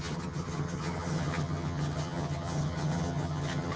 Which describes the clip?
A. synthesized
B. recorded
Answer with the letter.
A